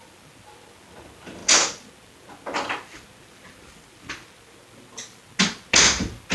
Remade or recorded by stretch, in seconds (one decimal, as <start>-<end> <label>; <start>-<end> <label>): 0.0-6.3 recorded